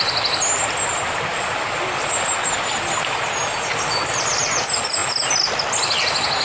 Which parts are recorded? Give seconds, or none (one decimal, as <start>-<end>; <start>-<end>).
0.0-6.4